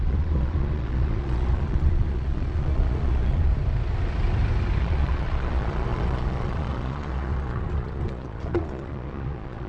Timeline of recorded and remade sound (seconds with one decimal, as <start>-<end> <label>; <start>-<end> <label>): 0.0-3.5 remade; 3.5-4.8 recorded; 4.8-9.7 remade